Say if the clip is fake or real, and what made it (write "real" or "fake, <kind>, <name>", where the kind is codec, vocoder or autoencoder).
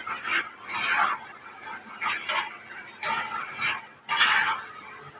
real